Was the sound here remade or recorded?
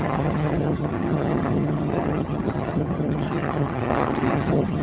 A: remade